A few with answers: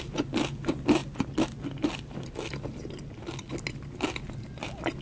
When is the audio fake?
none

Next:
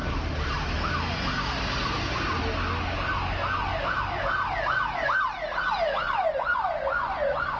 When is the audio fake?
6.0-7.6 (vocoder, Vocos)

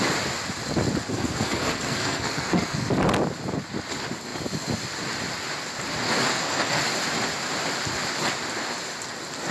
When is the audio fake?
1.1-2.9 (codec, SNAC); 6.3-6.8

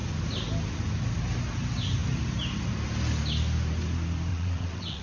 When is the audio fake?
4.3-5.0 (vocoder, WaveNeXt)

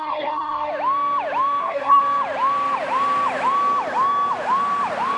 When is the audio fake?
0.0-0.7 (codec, SNAC); 1.6-2.0

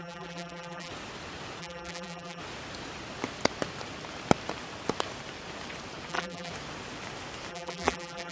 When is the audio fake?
0.0-0.9 (vocoder, BigVGAN v2); 1.6-2.4; 6.1-6.5; 7.5-8.3